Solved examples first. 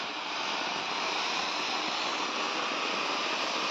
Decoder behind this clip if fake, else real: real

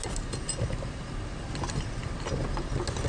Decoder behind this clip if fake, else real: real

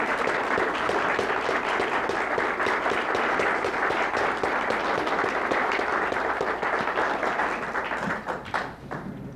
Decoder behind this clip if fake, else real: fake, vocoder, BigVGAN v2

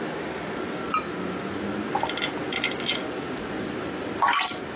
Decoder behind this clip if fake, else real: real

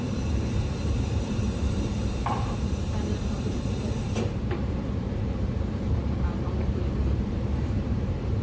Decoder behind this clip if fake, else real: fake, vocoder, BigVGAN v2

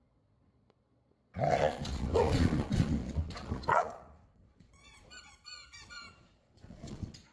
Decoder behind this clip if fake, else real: fake, vocoder, Vocos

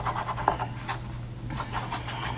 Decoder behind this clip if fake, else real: real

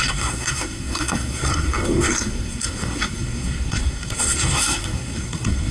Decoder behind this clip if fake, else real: fake, codec, SNAC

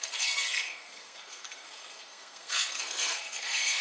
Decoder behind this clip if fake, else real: fake, codec, SNAC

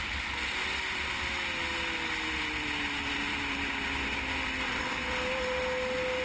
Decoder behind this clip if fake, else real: real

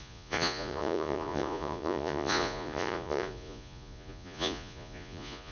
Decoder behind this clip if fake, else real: fake, vocoder, Vocos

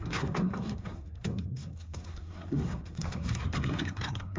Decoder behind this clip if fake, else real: fake, codec, SNAC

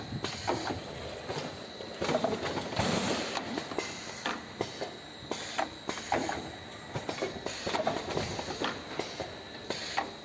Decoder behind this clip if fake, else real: real